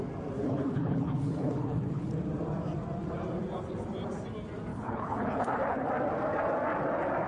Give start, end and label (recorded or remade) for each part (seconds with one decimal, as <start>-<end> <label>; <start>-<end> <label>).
0.0-0.4 recorded; 0.4-2.1 remade; 2.1-4.7 recorded; 4.7-5.9 remade; 5.9-7.3 recorded